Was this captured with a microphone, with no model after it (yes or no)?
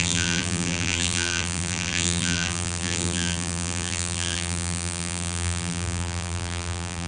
no